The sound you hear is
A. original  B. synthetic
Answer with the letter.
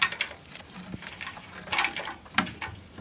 A